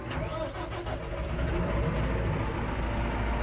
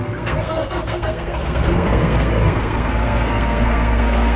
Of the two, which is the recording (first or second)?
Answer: first